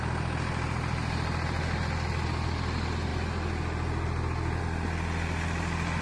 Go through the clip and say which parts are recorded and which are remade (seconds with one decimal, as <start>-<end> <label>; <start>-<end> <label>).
0.0-6.0 recorded